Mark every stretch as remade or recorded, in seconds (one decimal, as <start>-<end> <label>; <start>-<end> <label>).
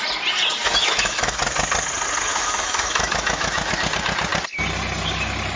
0.0-0.6 recorded; 0.6-1.4 remade; 1.4-2.3 recorded; 2.3-3.7 remade; 3.7-5.6 recorded